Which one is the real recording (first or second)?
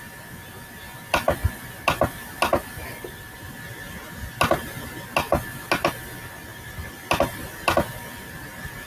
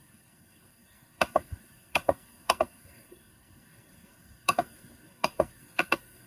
first